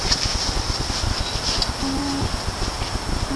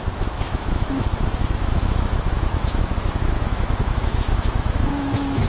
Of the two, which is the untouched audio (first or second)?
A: first